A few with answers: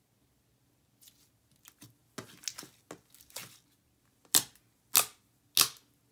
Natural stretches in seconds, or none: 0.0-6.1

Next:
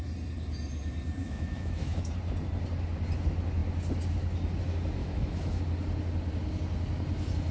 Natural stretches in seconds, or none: 0.0-1.2; 2.1-5.0; 5.6-7.5

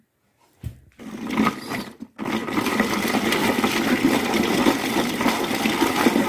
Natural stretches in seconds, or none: 0.0-6.3

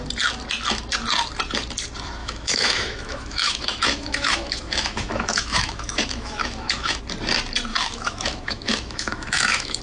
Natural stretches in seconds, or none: 0.0-2.2; 7.0-7.7

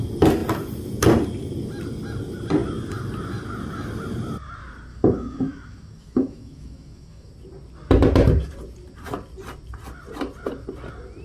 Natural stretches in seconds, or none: 0.0-4.9; 7.3-11.2